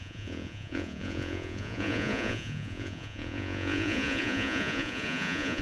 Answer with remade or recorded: remade